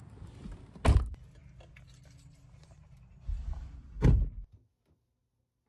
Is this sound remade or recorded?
recorded